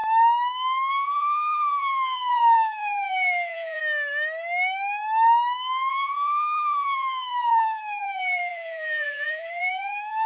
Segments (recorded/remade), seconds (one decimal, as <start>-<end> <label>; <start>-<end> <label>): 0.0-0.9 recorded; 0.9-3.8 remade; 3.8-5.9 recorded; 5.9-10.3 remade